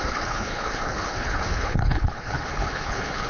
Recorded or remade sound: remade